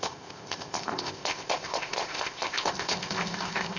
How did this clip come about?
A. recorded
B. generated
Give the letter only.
B